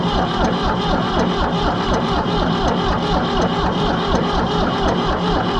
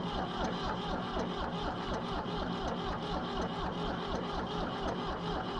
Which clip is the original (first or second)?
second